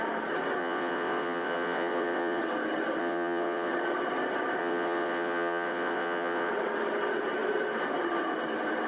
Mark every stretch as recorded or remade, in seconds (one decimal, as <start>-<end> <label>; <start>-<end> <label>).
0.0-0.6 recorded; 0.6-2.4 remade; 2.4-3.0 recorded; 3.0-3.7 remade; 3.7-4.6 recorded; 4.6-6.5 remade; 6.5-8.9 recorded